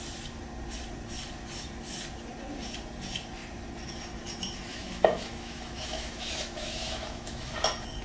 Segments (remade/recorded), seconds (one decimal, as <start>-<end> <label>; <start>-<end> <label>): 0.0-4.7 recorded; 4.7-7.5 remade; 7.5-8.0 recorded